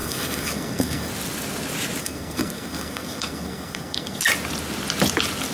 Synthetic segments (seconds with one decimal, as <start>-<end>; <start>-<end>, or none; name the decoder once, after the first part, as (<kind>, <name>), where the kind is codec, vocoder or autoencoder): 0.0-1.1 (codec, SNAC); 2.0-4.2